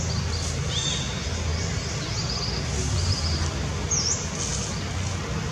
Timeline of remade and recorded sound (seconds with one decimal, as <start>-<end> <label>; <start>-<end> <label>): 0.0-5.5 recorded